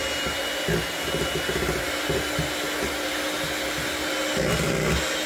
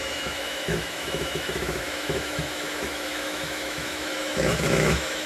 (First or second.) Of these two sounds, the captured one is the first